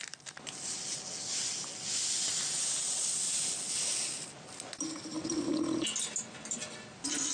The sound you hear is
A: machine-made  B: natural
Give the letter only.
B